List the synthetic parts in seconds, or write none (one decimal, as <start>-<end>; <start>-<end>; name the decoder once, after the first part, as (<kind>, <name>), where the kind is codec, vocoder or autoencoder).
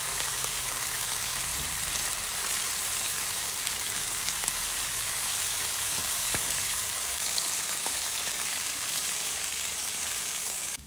0.0-1.5 (codec, DAC); 3.0-10.9